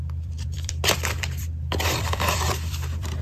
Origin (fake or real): fake